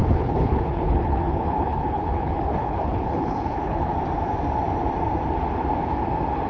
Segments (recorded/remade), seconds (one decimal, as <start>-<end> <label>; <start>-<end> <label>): 0.0-3.9 remade; 3.9-6.5 recorded